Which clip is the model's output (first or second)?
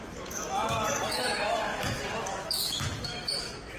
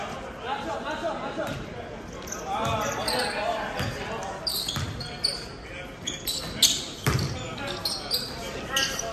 first